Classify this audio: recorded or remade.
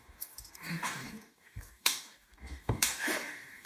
remade